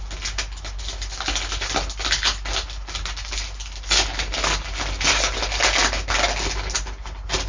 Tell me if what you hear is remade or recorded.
recorded